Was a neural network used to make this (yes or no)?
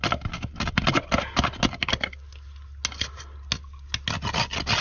no